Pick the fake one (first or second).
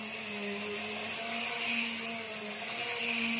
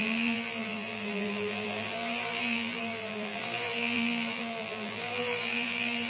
second